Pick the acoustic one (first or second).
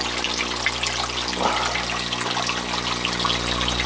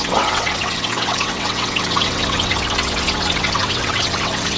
first